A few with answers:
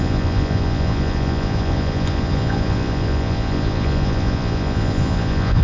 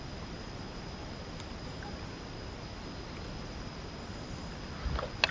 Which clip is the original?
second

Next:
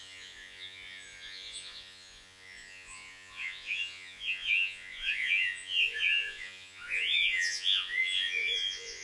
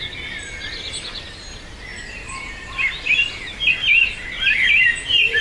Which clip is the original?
second